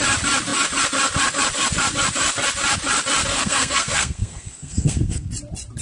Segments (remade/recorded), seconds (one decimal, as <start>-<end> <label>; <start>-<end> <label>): 0.0-3.3 recorded; 3.3-5.3 remade; 5.3-5.8 recorded